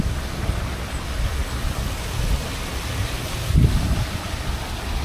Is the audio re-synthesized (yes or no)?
no